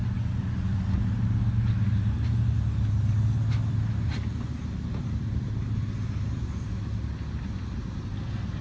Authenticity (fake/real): real